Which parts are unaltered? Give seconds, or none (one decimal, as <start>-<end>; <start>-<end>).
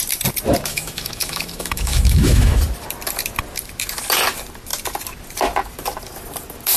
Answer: 0.0-0.7; 2.6-6.8